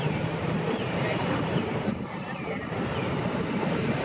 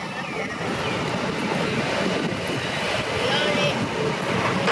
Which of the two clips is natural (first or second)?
second